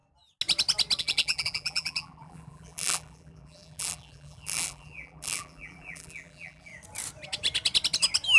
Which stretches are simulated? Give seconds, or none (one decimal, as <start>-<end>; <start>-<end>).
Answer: 1.0-6.7